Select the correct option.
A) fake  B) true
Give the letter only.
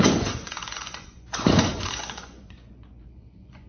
A